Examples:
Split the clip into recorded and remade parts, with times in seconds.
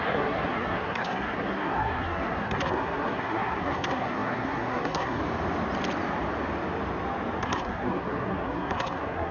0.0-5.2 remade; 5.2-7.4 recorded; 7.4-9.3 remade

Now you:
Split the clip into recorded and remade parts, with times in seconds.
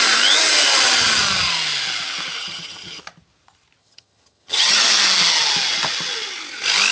0.0-2.4 recorded; 2.4-3.0 remade; 3.0-3.8 recorded; 3.8-4.8 remade; 4.8-6.9 recorded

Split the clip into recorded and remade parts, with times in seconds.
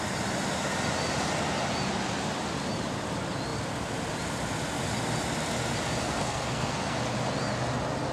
0.0-6.0 recorded; 6.0-7.0 remade; 7.0-8.1 recorded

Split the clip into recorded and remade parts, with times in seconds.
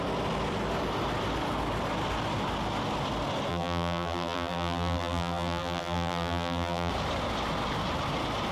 0.0-3.5 recorded; 3.5-6.9 remade; 6.9-8.5 recorded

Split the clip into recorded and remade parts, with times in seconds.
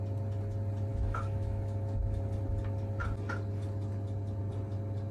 0.0-0.9 recorded; 0.9-2.2 remade; 2.2-5.1 recorded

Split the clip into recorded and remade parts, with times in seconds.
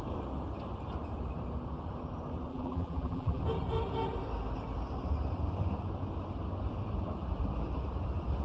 0.0-2.5 recorded; 2.5-3.4 remade; 3.4-8.4 recorded